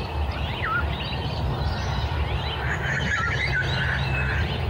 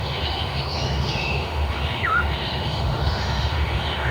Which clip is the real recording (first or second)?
first